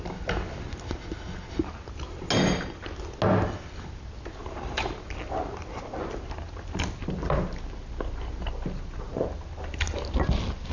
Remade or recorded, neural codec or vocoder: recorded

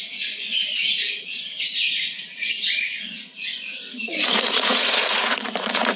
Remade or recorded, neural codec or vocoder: remade, vocoder, Vocos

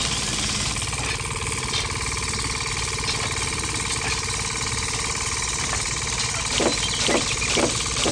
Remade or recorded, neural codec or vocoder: recorded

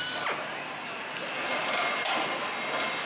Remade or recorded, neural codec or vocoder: recorded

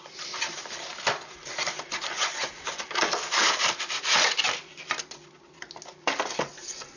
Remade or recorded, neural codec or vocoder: recorded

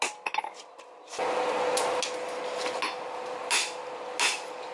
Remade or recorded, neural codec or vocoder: recorded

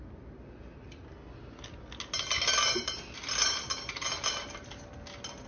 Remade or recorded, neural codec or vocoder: recorded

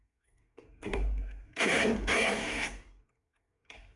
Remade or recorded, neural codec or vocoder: remade, codec, SNAC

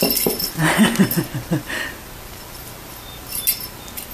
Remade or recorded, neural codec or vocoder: recorded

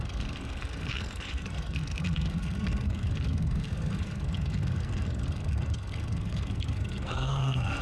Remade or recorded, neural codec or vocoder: remade, codec, SNAC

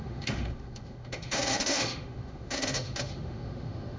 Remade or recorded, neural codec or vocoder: remade, autoencoder, DAC-VAE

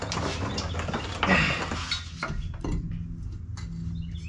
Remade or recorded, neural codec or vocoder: recorded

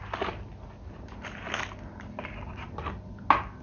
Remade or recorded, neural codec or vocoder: recorded